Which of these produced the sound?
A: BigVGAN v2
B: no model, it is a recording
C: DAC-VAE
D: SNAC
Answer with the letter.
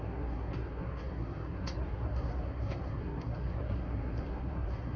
D